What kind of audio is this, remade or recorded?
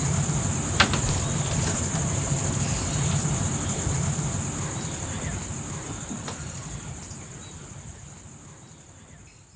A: recorded